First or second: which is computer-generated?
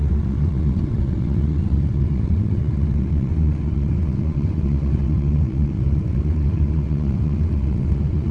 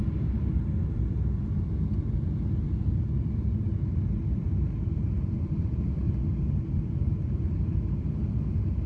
first